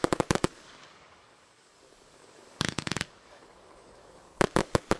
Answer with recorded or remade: remade